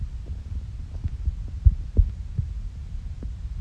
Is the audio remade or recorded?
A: recorded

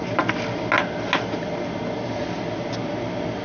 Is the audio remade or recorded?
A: recorded